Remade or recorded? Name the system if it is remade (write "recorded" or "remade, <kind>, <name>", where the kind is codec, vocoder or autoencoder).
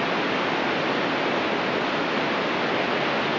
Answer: recorded